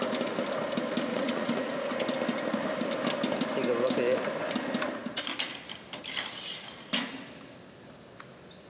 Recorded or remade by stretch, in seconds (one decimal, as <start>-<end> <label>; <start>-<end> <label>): 0.0-1.1 recorded; 1.1-1.9 remade; 1.9-8.7 recorded